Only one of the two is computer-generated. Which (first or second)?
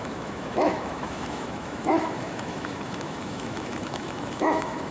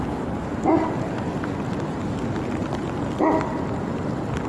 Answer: first